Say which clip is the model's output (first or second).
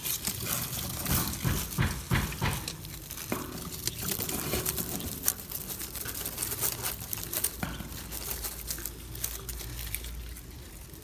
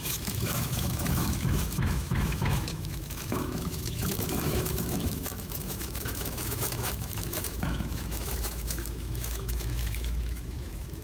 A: second